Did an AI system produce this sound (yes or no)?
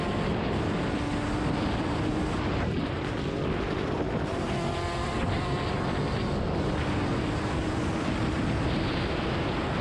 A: no